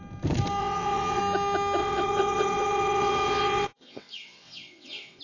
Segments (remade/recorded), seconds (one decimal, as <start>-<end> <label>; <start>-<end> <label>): 0.0-0.6 recorded; 0.6-1.2 remade; 1.2-1.8 recorded; 1.8-5.2 remade